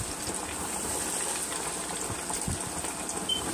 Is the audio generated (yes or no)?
no